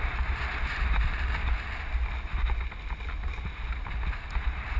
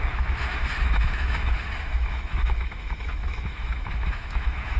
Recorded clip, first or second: first